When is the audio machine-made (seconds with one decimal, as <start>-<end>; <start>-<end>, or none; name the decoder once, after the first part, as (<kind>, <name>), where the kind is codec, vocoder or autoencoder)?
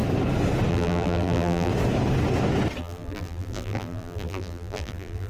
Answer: 0.7-1.7 (vocoder, BigVGAN v2); 2.8-5.3